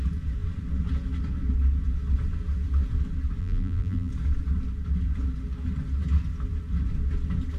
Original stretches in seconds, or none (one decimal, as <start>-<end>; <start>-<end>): 0.0-3.4; 4.1-7.6